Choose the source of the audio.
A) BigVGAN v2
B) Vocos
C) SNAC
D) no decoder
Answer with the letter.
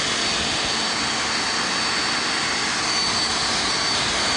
D